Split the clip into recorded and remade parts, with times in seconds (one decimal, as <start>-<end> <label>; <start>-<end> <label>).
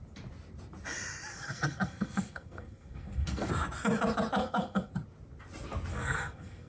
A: 0.0-1.3 recorded; 1.3-3.5 remade; 3.5-4.4 recorded; 4.4-4.9 remade; 4.9-5.9 recorded; 5.9-6.7 remade